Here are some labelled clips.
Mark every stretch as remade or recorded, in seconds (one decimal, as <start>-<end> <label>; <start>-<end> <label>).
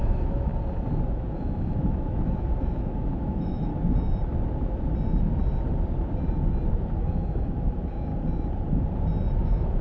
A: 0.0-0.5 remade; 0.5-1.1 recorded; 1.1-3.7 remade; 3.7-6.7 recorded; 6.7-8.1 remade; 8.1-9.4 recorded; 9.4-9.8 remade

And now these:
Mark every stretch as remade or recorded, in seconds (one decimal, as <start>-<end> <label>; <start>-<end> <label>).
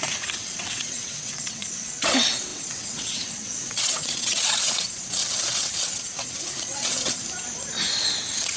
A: 0.0-7.2 remade; 7.2-8.2 recorded; 8.2-8.6 remade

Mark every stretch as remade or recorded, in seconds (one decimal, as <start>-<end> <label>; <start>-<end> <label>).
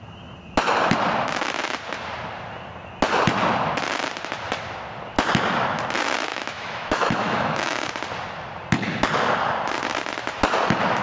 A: 0.0-6.3 recorded; 6.3-7.9 remade; 7.9-11.0 recorded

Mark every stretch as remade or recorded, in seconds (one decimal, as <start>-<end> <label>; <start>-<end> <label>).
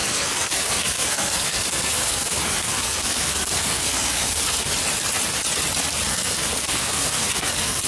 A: 0.0-4.7 remade; 4.7-6.1 recorded; 6.1-7.9 remade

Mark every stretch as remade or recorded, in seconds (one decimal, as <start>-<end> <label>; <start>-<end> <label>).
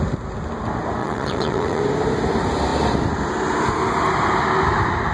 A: 0.0-1.0 recorded; 1.0-1.8 remade; 1.8-5.1 recorded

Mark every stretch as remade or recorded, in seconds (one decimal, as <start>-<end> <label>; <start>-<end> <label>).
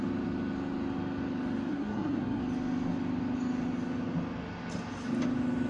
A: 0.0-1.7 recorded; 1.7-2.4 remade; 2.4-5.7 recorded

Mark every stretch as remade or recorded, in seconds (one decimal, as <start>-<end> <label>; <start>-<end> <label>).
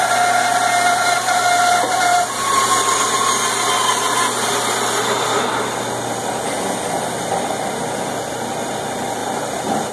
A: 0.0-9.2 recorded; 9.2-9.9 remade